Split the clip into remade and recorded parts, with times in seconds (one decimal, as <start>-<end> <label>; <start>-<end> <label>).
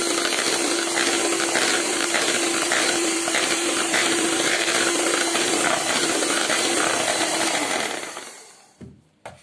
0.0-1.7 recorded; 1.7-9.4 remade